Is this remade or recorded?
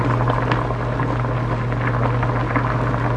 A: recorded